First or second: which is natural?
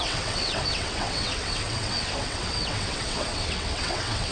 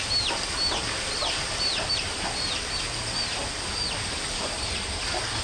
second